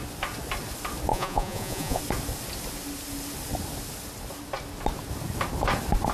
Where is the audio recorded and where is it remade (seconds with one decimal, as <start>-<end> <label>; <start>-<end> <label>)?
0.0-1.1 recorded; 1.1-2.0 remade; 2.0-6.1 recorded